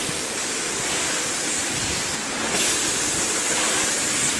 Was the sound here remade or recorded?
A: recorded